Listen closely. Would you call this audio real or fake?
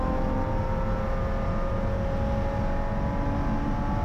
real